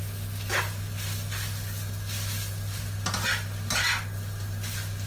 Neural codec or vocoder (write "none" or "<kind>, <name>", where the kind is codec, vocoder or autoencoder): none